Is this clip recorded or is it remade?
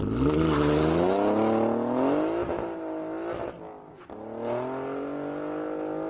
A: recorded